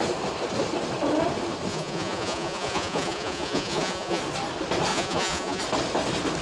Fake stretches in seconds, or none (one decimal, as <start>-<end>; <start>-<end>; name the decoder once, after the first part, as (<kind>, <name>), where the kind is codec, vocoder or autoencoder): 1.7-4.2 (vocoder, Vocos); 4.9-5.6

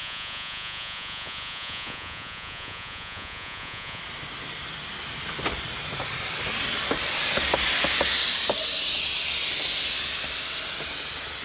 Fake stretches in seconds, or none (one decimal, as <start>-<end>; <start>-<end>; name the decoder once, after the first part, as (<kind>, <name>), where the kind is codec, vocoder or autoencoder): 0.0-4.0 (vocoder, Vocos)

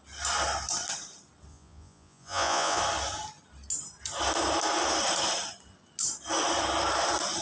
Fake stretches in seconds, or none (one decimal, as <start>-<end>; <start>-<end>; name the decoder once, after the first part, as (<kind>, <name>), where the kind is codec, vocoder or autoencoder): 1.5-2.8 (vocoder, Vocos)